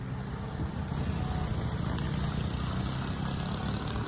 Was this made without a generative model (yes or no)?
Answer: yes